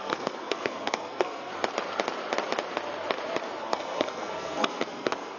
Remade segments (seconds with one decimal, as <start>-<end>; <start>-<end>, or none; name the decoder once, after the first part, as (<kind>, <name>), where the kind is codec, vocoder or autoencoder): 0.0-1.5 (codec, SNAC); 3.6-5.4